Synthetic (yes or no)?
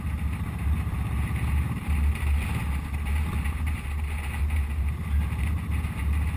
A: no